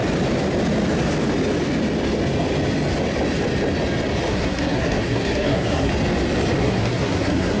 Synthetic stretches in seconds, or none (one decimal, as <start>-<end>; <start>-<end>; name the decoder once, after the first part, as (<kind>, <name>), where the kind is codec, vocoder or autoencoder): 4.3-5.9 (codec, SNAC); 6.6-7.6